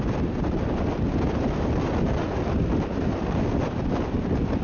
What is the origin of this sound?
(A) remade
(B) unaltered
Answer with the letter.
B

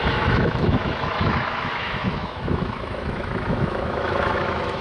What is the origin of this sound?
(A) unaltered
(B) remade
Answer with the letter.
B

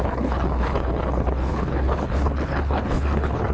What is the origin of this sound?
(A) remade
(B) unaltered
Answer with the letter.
A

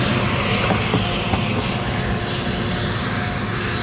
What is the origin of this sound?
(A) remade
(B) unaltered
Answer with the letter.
B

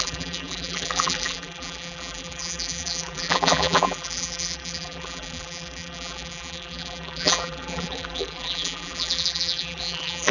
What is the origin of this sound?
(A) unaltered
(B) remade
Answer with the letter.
B